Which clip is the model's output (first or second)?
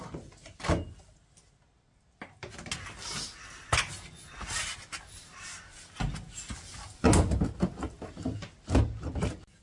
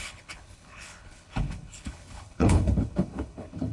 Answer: second